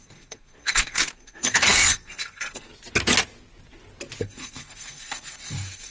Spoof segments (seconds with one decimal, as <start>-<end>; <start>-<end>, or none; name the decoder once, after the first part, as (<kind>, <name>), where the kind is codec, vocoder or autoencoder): 0.0-2.7 (codec, SNAC); 4.2-5.9